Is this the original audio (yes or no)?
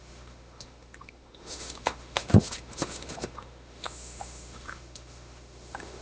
no